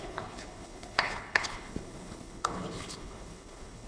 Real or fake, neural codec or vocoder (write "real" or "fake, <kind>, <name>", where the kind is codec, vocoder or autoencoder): fake, codec, HILCodec